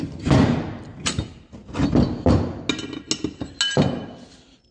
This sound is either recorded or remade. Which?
recorded